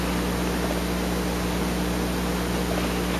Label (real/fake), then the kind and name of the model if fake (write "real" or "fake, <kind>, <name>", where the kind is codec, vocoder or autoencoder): real